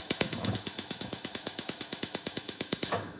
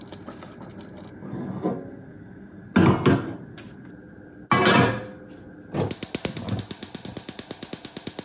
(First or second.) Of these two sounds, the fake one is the first